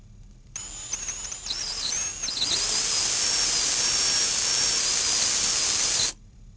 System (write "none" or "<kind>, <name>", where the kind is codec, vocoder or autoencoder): none